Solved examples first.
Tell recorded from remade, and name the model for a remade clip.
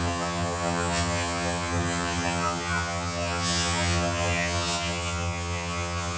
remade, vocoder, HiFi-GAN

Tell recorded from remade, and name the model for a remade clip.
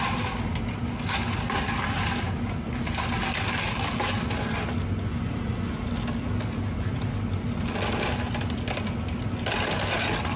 recorded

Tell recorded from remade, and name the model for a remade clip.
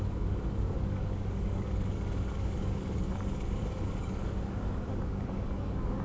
remade, codec, DAC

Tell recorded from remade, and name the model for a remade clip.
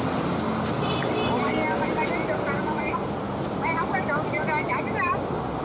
recorded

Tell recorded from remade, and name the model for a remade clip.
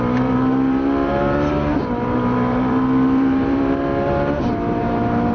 remade, vocoder, BigVGAN v2